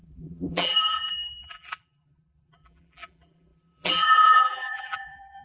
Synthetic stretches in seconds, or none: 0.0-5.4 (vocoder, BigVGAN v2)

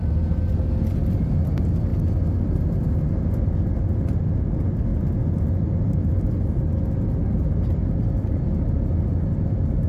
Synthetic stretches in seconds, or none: none

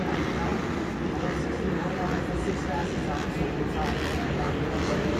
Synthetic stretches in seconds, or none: 0.0-2.6 (vocoder, BigVGAN v2); 4.7-5.2

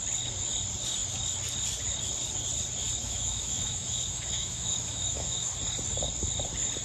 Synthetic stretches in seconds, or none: 3.0-5.5 (autoencoder, DAC-VAE)

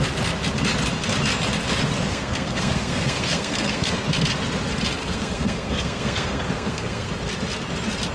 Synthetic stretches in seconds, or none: 2.1-3.9 (codec, SNAC); 5.0-7.1